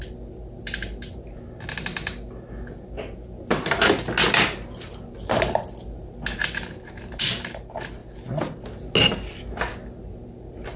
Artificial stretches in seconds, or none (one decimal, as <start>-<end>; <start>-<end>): none